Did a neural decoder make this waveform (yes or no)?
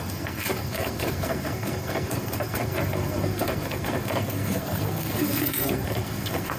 yes